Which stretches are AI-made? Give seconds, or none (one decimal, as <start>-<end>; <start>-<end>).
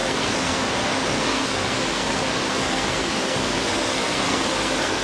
0.0-5.0